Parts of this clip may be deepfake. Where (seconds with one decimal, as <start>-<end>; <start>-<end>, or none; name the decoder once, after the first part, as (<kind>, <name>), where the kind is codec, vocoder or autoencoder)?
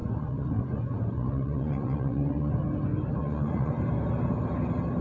0.0-2.5 (vocoder, Vocos); 3.2-3.7